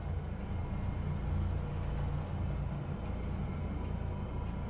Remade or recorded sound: recorded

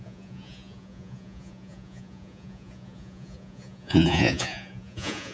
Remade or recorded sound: remade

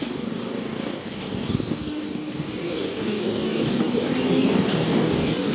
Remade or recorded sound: remade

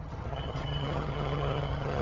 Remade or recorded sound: remade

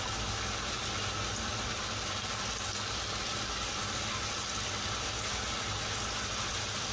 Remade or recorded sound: recorded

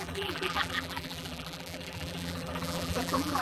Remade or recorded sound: remade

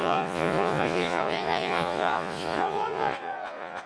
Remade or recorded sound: remade